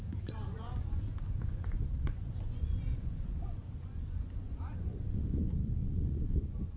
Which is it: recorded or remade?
remade